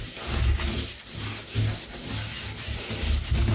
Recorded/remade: recorded